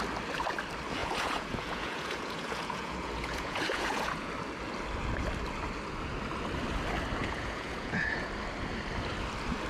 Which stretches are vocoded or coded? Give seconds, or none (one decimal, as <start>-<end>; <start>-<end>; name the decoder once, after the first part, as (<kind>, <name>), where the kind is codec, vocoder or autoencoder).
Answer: 1.0-4.3 (vocoder, Vocos); 7.2-8.3